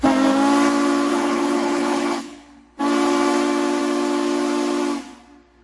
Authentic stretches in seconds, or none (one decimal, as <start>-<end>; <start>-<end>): 0.0-1.1; 2.8-5.6